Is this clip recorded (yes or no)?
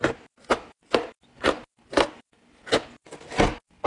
yes